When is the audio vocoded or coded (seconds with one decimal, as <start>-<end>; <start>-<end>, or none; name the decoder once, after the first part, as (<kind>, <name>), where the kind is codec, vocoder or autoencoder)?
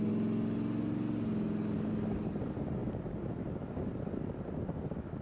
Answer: none